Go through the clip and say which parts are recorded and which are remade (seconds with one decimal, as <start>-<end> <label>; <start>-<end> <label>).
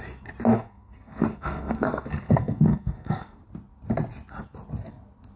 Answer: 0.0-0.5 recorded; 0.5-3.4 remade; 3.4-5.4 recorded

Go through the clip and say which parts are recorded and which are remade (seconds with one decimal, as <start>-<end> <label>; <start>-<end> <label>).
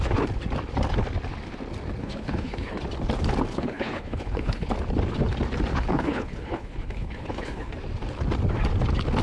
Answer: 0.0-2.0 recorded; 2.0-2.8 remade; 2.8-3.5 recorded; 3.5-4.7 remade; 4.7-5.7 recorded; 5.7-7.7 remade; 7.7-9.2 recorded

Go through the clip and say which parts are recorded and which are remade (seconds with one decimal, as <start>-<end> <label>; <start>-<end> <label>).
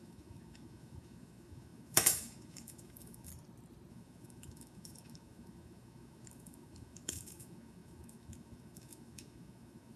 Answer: 0.0-3.3 remade; 3.3-3.9 recorded; 3.9-10.0 remade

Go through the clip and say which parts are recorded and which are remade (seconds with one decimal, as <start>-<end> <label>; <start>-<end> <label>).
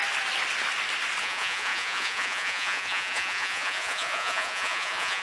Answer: 0.0-1.2 recorded; 1.2-5.2 remade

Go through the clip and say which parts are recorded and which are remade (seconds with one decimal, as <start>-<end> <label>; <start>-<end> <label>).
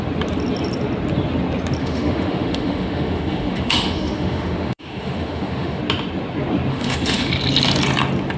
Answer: 0.0-1.8 recorded; 1.8-5.8 remade; 5.8-6.7 recorded; 6.7-7.3 remade; 7.3-8.4 recorded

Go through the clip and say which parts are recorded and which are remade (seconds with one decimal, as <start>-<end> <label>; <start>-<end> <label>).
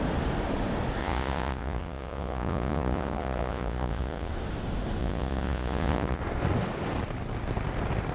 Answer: 0.0-1.0 recorded; 1.0-4.3 remade; 4.3-5.0 recorded; 5.0-6.2 remade; 6.2-8.1 recorded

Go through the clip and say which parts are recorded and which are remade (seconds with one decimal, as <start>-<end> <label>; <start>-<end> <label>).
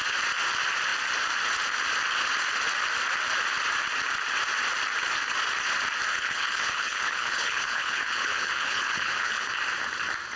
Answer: 0.0-6.1 recorded; 6.1-9.5 remade; 9.5-10.4 recorded